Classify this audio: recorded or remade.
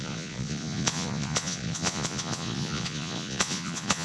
remade